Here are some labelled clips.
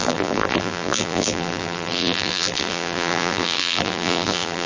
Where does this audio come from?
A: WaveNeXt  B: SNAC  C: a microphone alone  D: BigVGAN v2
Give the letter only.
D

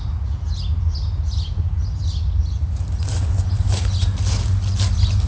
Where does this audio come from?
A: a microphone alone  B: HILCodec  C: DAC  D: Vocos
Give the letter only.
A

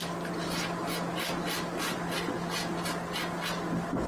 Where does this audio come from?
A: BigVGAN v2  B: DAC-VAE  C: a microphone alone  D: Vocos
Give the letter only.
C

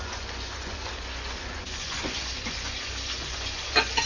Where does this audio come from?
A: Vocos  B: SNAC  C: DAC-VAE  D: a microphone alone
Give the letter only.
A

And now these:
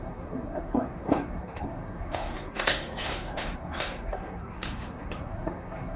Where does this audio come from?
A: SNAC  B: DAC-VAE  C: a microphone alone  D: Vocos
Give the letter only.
A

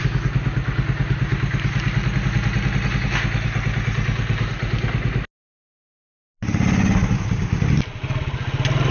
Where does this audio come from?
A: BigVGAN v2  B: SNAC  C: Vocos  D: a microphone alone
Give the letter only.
D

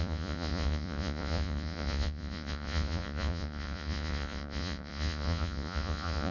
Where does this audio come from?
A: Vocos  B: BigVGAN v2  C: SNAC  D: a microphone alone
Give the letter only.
A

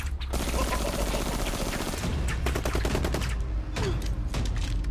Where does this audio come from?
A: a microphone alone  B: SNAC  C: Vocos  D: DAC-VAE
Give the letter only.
A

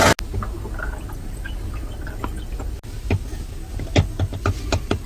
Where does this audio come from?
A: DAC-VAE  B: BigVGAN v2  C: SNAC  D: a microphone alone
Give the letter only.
D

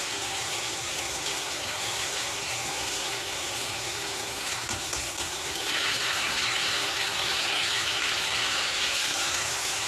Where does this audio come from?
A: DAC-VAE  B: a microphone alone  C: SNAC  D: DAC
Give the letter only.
C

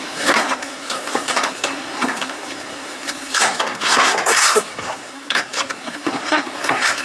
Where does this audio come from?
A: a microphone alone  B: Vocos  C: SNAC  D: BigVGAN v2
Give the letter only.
C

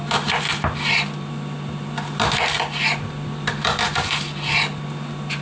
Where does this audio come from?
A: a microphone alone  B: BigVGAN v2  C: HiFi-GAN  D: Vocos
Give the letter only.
A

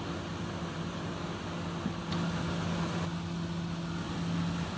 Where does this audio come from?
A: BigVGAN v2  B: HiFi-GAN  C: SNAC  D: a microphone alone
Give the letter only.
D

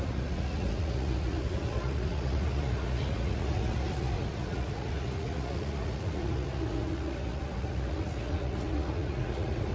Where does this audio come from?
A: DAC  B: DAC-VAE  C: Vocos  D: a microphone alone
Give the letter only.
C